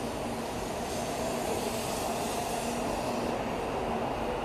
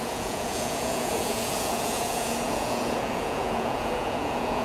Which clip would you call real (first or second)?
first